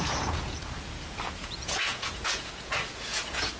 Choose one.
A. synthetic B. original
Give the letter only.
A